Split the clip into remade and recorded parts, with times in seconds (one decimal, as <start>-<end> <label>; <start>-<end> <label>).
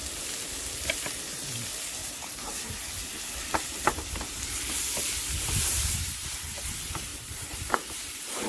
0.0-2.0 recorded; 2.0-2.9 remade; 2.9-5.7 recorded; 5.7-6.5 remade; 6.5-7.1 recorded; 7.1-8.5 remade